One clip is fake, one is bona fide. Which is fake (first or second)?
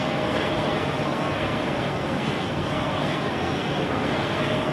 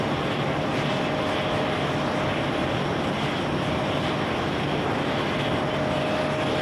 first